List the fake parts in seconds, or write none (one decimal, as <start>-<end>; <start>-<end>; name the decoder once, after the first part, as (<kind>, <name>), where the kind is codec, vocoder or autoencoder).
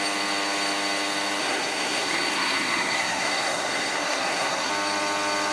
1.4-4.7 (codec, SNAC)